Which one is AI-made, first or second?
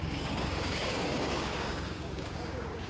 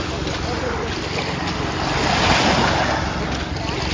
first